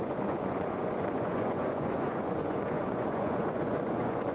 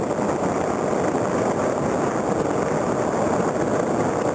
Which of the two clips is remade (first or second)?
first